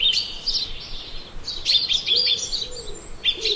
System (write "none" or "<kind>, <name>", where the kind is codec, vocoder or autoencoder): none